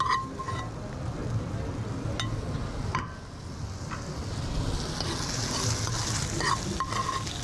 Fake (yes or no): no